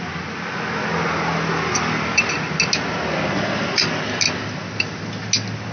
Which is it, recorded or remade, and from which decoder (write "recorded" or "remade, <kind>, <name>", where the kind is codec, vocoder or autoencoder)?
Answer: recorded